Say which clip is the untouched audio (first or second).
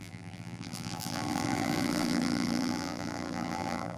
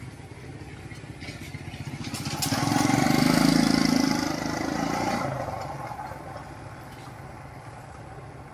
second